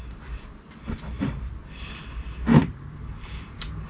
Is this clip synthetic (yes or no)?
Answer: no